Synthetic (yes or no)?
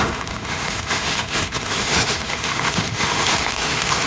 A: yes